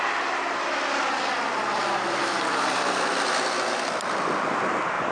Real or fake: real